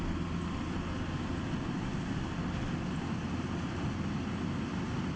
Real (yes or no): yes